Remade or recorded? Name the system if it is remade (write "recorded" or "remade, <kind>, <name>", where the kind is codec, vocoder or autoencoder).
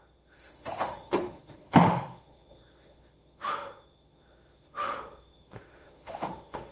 remade, autoencoder, DAC-VAE